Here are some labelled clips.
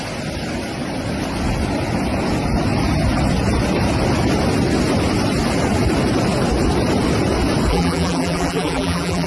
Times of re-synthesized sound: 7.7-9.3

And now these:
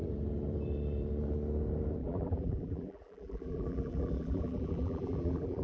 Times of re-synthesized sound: 2.0-5.6

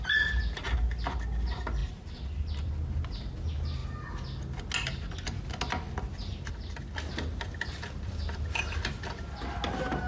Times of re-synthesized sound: 1.8-2.7